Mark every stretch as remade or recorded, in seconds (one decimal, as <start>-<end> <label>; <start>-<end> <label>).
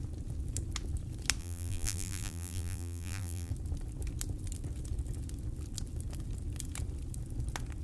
0.0-1.4 recorded; 1.4-3.5 remade; 3.5-7.8 recorded